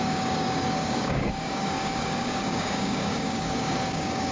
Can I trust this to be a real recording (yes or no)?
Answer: no